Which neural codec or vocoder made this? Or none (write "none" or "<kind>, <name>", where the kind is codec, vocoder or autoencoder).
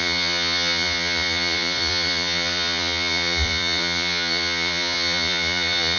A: vocoder, Vocos